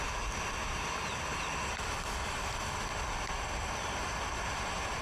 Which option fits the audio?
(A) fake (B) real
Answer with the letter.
B